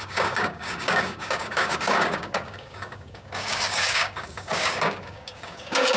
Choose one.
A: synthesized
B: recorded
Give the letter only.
A